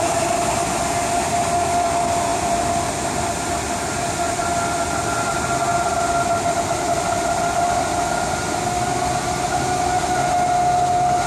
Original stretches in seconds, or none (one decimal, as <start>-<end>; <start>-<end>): 0.0-2.3; 4.4-11.3